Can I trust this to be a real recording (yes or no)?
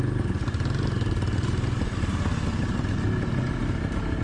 yes